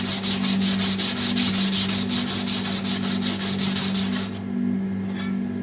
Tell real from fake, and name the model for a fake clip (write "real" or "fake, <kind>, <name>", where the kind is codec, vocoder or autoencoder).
real